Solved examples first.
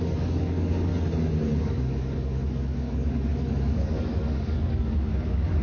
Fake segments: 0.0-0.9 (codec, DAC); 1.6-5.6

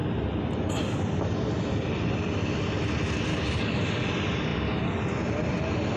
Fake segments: 3.3-3.8 (codec, DAC)